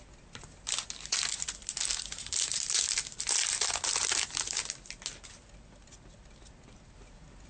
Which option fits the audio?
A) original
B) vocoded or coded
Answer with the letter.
A